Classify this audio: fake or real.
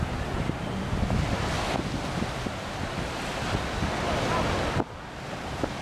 real